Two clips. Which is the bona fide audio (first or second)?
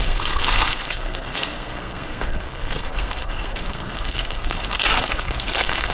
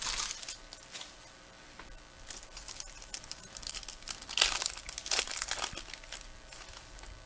second